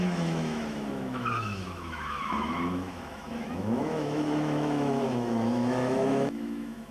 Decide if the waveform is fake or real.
fake